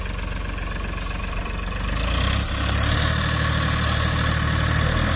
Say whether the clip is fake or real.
real